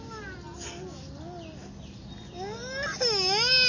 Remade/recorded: recorded